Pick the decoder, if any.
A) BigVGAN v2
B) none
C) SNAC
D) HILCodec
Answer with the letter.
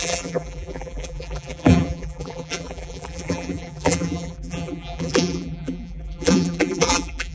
A